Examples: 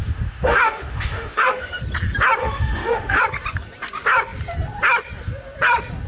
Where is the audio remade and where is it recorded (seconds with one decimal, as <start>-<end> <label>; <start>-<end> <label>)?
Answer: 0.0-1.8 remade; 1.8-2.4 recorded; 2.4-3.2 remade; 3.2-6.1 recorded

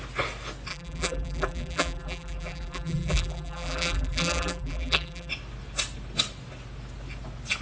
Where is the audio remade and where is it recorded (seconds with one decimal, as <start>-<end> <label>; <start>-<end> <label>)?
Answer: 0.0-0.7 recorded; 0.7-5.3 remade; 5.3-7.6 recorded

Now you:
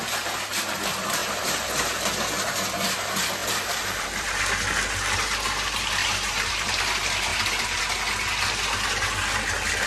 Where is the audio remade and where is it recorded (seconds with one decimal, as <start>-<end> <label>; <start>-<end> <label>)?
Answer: 0.0-1.2 recorded; 1.2-2.0 remade; 2.0-3.4 recorded; 3.4-4.4 remade; 4.4-6.0 recorded; 6.0-6.8 remade; 6.8-7.3 recorded; 7.3-7.8 remade; 7.8-9.9 recorded

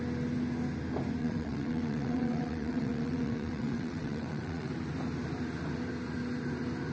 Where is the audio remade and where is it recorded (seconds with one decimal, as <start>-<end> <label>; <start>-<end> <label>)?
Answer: 0.0-1.2 recorded; 1.2-4.7 remade; 4.7-6.9 recorded

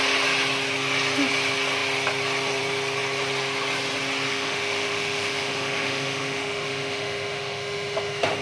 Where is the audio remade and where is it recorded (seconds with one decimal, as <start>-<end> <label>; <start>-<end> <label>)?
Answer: 0.0-4.3 recorded; 4.3-8.4 remade